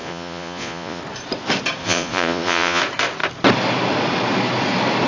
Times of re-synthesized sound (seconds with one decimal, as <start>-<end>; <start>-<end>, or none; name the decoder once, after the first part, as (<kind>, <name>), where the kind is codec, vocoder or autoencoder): 0.0-1.0 (vocoder, Vocos); 1.8-2.8